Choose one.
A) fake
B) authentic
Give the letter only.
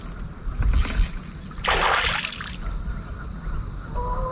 B